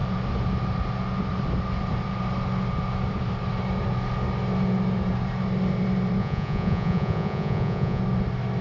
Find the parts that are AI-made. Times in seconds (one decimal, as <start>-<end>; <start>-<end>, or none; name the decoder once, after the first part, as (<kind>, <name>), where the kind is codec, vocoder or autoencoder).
6.2-8.0 (vocoder, Vocos)